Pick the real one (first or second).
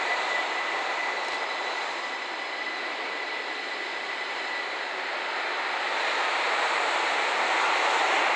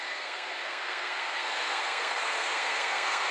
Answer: first